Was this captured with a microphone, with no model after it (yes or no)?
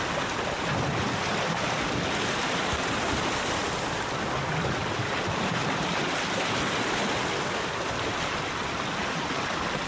yes